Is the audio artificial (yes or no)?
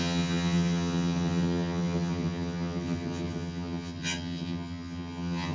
yes